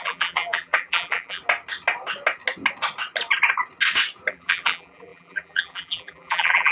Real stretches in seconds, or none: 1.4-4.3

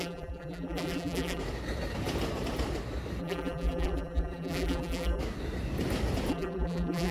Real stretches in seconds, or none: 1.4-3.2; 5.2-6.3

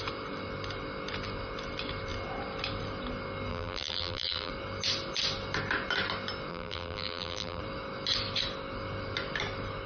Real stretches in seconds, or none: 0.0-3.5; 4.5-6.5; 7.6-9.9

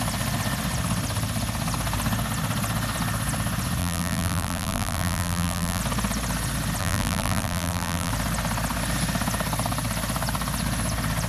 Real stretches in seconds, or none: 0.0-3.8; 5.8-6.8; 8.1-11.3

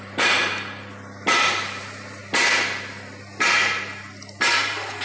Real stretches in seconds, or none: 0.4-1.4; 2.2-4.6

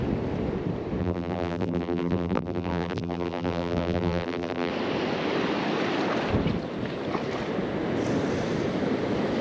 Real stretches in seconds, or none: 0.0-1.0; 4.7-9.4

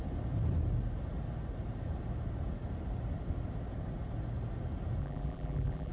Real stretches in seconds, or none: 0.0-5.0

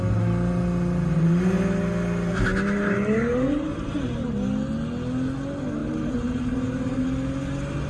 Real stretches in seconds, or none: 0.0-5.8; 7.0-7.9